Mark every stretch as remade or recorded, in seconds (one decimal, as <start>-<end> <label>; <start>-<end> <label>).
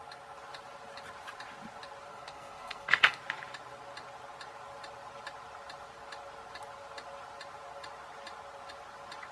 0.0-2.1 recorded; 2.1-3.2 remade; 3.2-9.3 recorded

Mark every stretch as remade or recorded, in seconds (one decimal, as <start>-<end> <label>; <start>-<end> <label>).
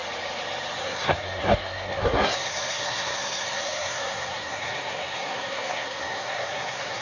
0.0-0.8 recorded; 0.8-7.0 remade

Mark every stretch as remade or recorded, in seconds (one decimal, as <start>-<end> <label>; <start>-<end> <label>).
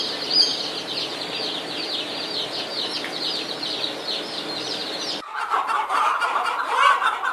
0.0-4.8 recorded; 4.8-6.6 remade; 6.6-7.3 recorded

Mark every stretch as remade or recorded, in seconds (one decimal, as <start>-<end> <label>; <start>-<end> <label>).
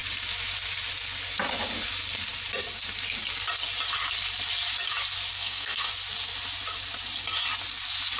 0.0-5.3 recorded; 5.3-5.9 remade; 5.9-8.2 recorded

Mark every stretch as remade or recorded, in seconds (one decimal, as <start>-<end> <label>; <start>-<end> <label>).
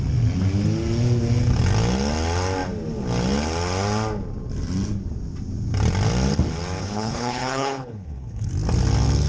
0.0-6.8 recorded; 6.8-8.5 remade; 8.5-9.3 recorded